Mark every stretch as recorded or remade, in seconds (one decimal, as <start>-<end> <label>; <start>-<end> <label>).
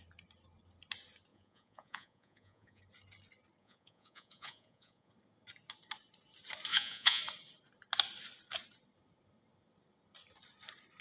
0.0-1.3 recorded; 1.3-2.8 remade; 2.8-3.6 recorded; 3.6-5.1 remade; 5.1-6.7 recorded; 6.7-7.2 remade; 7.2-11.0 recorded